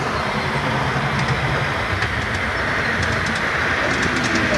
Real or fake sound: real